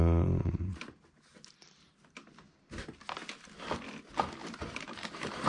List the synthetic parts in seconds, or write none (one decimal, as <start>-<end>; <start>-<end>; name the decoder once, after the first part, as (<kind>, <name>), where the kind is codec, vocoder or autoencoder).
4.4-5.5 (vocoder, BigVGAN v2)